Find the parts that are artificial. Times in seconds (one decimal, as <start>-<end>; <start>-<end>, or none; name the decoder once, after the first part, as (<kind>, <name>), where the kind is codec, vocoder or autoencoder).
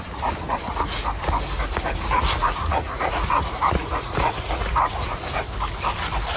2.4-5.2 (vocoder, Vocos)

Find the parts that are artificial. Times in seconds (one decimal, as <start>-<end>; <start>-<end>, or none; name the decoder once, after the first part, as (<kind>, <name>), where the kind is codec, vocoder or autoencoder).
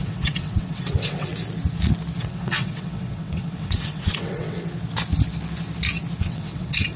0.0-1.3 (vocoder, WaveNeXt); 2.2-4.6; 6.2-7.0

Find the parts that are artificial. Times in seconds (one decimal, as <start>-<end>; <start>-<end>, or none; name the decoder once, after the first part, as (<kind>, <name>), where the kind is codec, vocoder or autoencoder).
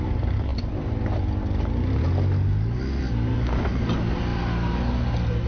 none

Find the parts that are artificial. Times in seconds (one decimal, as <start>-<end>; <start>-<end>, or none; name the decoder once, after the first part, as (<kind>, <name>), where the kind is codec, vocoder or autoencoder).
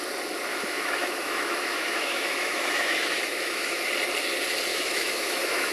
0.5-3.9 (autoencoder, DAC-VAE); 4.7-5.7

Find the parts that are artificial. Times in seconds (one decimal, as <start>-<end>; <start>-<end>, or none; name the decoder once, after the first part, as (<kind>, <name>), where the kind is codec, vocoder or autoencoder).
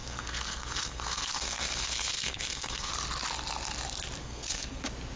0.0-2.9 (codec, SNAC); 4.2-4.8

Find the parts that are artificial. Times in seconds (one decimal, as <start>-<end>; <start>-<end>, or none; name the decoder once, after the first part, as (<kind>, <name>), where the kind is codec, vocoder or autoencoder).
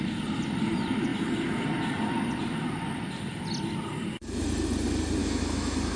5.2-6.0 (autoencoder, DAC-VAE)